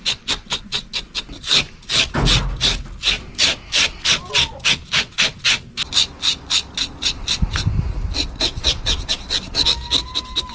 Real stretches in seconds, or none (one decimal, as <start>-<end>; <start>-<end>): 0.0-10.5